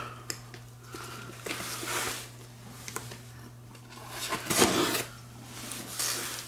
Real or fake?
real